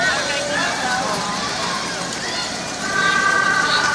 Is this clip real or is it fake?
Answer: fake